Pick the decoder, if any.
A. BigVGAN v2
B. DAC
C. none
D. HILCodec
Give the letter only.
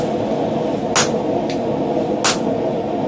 C